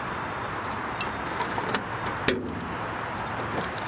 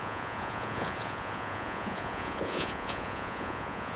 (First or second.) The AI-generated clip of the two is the second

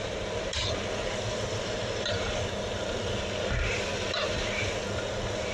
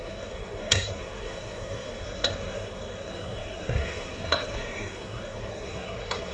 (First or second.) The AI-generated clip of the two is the second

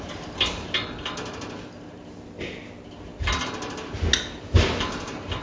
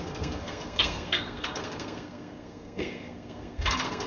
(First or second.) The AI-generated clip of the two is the second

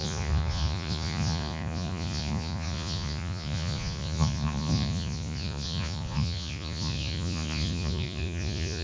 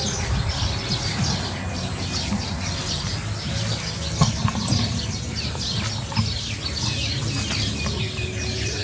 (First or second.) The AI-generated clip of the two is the first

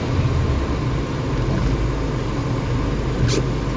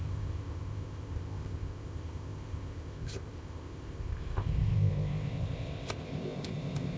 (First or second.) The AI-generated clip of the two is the second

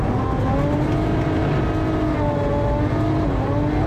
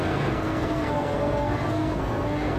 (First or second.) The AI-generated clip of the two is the second